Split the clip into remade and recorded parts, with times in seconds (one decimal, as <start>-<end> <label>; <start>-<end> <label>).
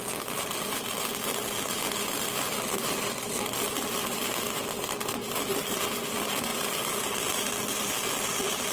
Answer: 0.0-8.7 recorded